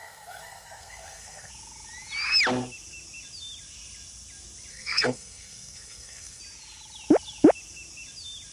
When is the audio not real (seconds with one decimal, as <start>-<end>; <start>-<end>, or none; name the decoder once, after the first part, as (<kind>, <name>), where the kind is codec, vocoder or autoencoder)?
0.0-1.5 (codec, SNAC); 4.7-6.4